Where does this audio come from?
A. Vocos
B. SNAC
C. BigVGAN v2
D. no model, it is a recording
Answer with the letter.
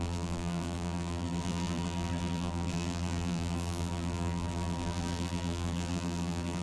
C